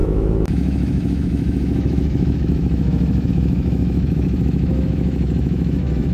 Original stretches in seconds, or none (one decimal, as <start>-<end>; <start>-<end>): none